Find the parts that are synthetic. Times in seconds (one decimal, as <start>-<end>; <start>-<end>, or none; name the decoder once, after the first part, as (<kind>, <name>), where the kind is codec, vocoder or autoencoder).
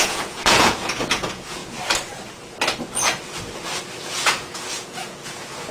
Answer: 0.0-1.6 (vocoder, Vocos); 4.0-5.7